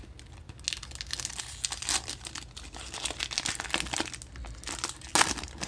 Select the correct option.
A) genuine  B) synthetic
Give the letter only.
A